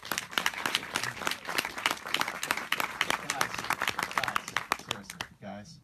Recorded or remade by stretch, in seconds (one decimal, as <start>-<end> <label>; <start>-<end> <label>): 0.0-3.5 remade; 3.5-5.8 recorded